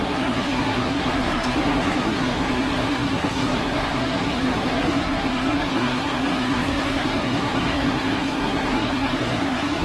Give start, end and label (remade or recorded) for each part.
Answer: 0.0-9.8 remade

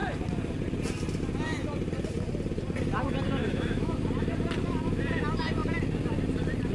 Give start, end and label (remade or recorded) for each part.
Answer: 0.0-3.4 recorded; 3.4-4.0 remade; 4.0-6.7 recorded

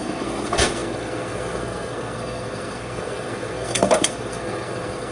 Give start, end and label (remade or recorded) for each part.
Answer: 0.0-5.1 remade

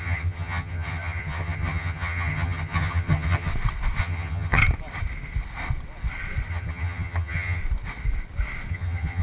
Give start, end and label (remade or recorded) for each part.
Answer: 0.0-3.5 remade; 3.5-4.0 recorded; 4.0-4.6 remade; 4.6-6.5 recorded; 6.5-7.6 remade; 7.6-8.7 recorded; 8.7-9.2 remade

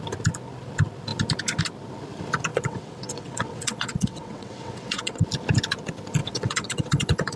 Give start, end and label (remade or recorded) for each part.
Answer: 0.0-2.5 recorded; 2.5-5.2 remade; 5.2-6.2 recorded; 6.2-7.4 remade

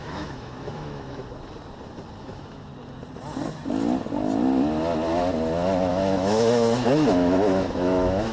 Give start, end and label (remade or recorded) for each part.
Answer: 0.0-1.2 remade; 1.2-2.2 recorded; 2.2-2.7 remade; 2.7-5.9 recorded; 5.9-8.3 remade

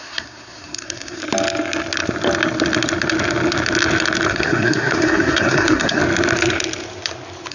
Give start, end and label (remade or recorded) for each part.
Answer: 0.0-1.2 remade; 1.2-4.3 recorded; 4.3-6.0 remade; 6.0-7.5 recorded